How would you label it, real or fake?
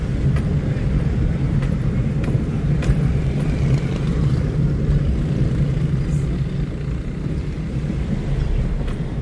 fake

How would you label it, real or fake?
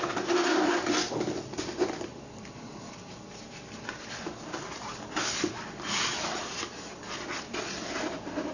fake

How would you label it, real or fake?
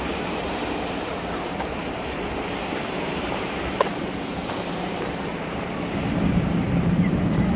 fake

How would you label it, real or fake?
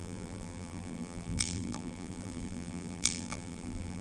fake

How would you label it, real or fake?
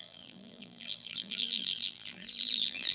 fake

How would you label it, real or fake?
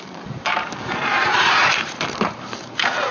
fake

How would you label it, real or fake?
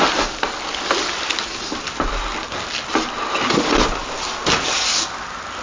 real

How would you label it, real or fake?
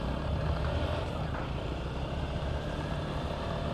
fake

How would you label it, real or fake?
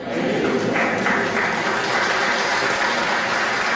real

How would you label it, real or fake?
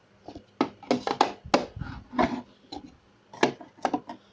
real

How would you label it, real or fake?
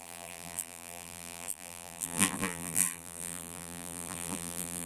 fake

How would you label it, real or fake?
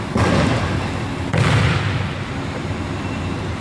real